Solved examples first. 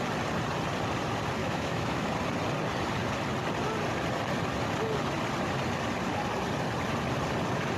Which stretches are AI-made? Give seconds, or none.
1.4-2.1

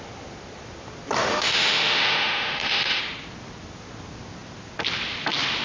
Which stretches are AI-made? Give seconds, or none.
1.3-3.0